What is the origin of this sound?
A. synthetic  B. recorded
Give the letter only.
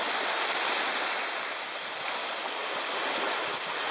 B